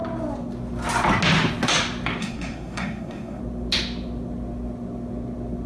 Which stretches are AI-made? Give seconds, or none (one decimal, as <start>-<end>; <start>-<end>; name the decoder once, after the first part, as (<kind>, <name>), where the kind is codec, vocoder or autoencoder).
2.2-3.4 (codec, SNAC)